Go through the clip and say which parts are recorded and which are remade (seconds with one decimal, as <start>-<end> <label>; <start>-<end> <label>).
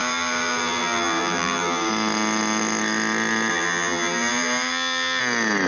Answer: 0.0-1.9 remade; 1.9-3.5 recorded; 3.5-5.2 remade; 5.2-5.7 recorded